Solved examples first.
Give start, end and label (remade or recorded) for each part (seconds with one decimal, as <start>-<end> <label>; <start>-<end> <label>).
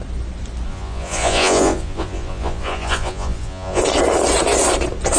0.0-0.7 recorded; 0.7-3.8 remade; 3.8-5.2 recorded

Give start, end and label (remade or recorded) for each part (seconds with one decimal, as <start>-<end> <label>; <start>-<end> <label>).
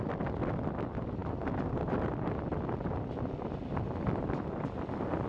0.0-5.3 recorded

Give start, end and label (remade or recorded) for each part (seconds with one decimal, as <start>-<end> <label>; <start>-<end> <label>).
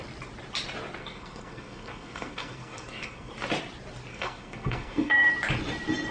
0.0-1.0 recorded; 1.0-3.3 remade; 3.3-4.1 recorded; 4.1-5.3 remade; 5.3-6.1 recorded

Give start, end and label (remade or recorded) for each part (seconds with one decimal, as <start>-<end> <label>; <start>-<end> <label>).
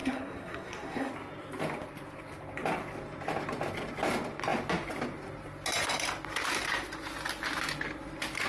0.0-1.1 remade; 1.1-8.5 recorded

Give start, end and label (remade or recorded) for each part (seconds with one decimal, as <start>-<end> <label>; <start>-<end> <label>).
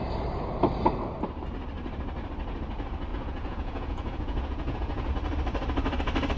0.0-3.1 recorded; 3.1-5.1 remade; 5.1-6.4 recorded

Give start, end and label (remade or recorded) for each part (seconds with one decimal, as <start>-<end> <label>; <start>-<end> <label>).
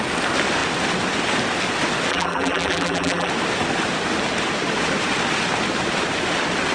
0.0-2.1 recorded; 2.1-3.3 remade; 3.3-6.7 recorded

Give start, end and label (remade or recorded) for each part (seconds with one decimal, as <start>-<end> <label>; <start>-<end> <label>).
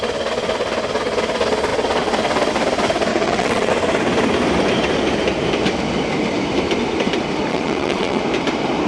0.0-3.1 recorded; 3.1-3.7 remade; 3.7-7.5 recorded; 7.5-8.2 remade; 8.2-8.9 recorded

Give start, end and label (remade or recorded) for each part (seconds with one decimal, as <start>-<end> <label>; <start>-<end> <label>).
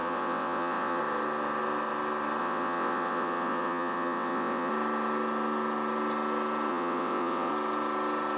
0.0-1.0 remade; 1.0-2.4 recorded; 2.4-4.7 remade; 4.7-6.7 recorded; 6.7-7.5 remade; 7.5-8.4 recorded